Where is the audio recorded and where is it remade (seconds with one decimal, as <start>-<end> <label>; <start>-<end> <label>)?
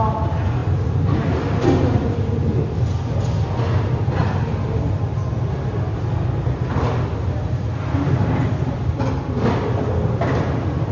0.0-10.9 recorded